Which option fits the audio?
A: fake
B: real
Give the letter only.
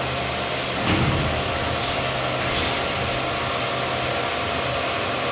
B